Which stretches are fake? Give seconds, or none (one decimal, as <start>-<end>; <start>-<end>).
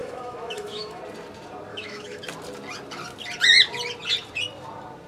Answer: 0.0-1.0; 1.7-2.2